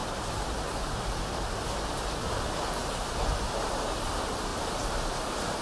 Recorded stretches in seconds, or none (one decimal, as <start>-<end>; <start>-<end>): 0.0-2.8; 3.7-4.5